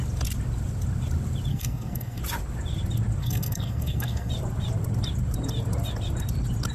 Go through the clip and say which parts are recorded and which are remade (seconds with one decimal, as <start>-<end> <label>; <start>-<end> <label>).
0.0-1.5 recorded; 1.5-2.2 remade; 2.2-3.2 recorded; 3.2-4.3 remade; 4.3-6.7 recorded